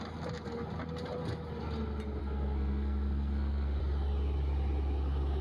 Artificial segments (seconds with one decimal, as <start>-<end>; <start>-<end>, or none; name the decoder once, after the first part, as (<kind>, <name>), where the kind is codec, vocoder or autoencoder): 2.2-3.8 (codec, SNAC)